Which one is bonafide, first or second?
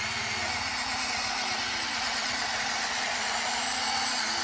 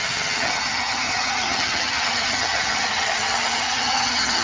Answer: first